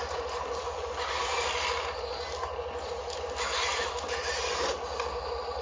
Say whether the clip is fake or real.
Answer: real